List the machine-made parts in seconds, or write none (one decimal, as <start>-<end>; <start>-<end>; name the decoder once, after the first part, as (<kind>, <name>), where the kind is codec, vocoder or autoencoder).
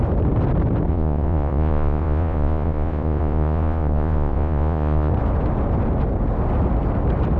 0.9-5.1 (vocoder, Vocos)